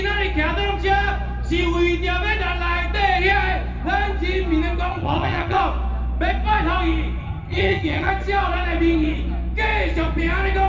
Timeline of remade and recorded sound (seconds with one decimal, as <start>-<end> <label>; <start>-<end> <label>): 0.0-4.9 recorded; 4.9-5.6 remade; 5.6-7.2 recorded; 7.2-8.1 remade; 8.1-10.7 recorded